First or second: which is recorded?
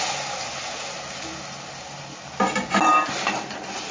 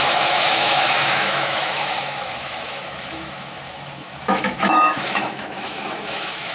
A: first